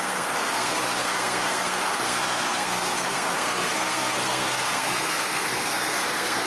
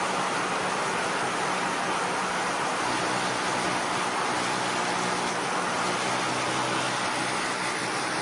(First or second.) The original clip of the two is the second